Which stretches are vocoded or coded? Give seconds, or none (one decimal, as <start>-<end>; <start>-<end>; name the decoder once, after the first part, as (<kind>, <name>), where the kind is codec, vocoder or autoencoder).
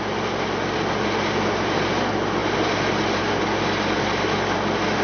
none